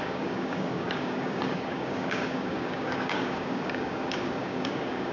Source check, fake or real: fake